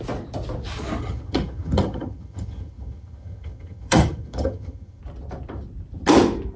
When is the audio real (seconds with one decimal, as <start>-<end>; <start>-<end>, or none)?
0.0-1.0; 5.0-6.6